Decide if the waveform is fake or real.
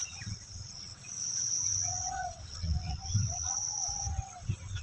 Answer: fake